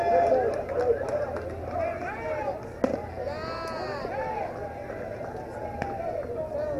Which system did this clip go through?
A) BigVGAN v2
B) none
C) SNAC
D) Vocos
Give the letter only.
B